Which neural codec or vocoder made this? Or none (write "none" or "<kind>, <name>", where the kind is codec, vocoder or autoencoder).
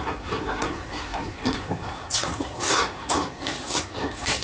codec, SNAC